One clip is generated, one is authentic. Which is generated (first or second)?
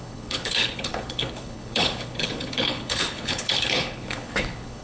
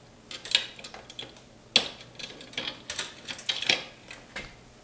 first